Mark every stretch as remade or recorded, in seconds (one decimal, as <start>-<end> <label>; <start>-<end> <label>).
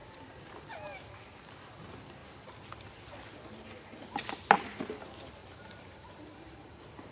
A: 0.0-5.4 recorded; 5.4-6.2 remade; 6.2-7.1 recorded